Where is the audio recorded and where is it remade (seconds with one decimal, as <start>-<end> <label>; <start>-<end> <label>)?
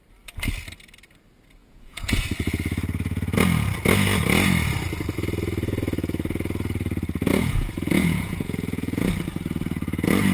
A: 0.0-1.6 recorded; 1.6-2.3 remade; 2.3-7.3 recorded; 7.3-9.1 remade; 9.1-10.3 recorded